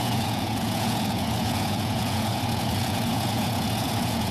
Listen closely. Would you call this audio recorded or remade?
remade